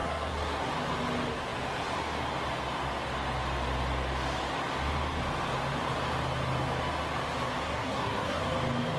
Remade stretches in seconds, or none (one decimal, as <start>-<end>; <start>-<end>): 0.0-0.7; 7.6-8.4